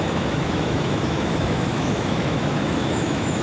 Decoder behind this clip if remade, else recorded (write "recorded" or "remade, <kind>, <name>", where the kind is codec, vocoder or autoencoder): remade, autoencoder, DAC-VAE